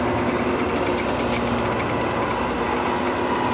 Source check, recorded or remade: recorded